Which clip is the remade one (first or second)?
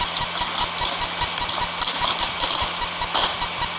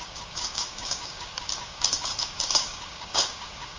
second